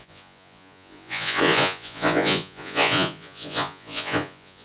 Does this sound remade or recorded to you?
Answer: remade